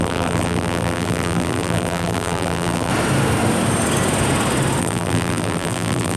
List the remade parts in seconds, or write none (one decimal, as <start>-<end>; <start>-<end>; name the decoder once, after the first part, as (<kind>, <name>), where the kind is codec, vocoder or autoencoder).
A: 0.0-2.9 (vocoder, BigVGAN v2); 4.8-6.2